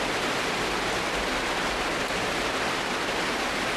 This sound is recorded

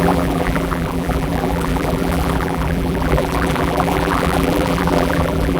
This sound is remade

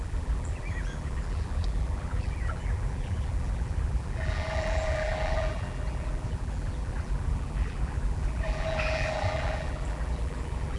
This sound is remade